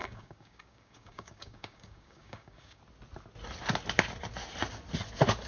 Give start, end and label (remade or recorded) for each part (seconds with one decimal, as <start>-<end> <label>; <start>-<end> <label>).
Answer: 0.0-2.8 remade; 2.8-5.5 recorded